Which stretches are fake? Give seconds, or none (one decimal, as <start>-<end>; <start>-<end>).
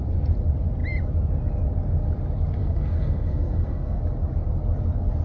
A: 2.6-4.0